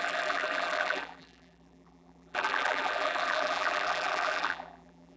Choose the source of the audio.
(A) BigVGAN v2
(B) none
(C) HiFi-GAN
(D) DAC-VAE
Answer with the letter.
A